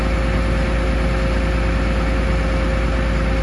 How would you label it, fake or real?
real